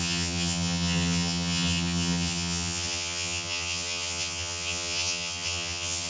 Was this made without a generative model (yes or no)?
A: no